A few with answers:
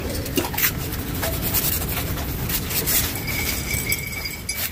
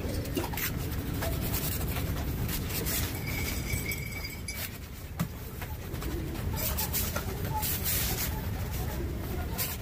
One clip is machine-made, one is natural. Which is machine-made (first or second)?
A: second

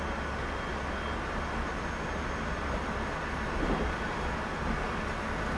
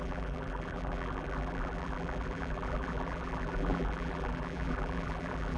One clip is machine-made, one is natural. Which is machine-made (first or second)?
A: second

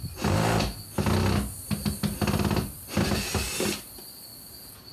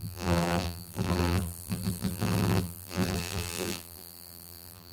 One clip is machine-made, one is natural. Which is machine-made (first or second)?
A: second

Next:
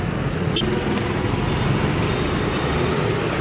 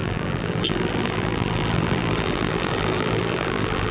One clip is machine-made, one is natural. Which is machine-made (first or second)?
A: second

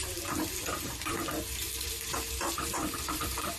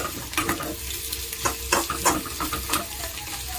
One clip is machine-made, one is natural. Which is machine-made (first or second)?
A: first